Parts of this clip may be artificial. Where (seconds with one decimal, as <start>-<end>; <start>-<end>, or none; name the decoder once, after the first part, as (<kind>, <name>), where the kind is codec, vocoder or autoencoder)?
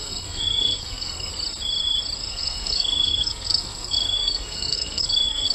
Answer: 0.0-1.3 (codec, SNAC); 2.3-5.5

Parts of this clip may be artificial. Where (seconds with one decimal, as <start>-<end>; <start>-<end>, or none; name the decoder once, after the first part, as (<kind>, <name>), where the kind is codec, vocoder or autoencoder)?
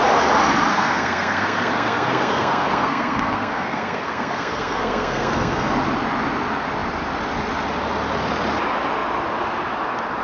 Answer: 0.7-5.7 (codec, SNAC)